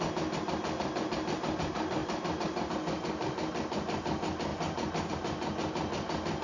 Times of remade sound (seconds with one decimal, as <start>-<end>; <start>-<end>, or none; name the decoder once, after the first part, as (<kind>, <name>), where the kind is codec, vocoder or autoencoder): none